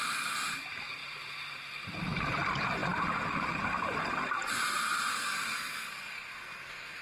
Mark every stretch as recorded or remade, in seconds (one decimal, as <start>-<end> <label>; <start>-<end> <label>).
0.0-5.1 recorded; 5.1-7.0 remade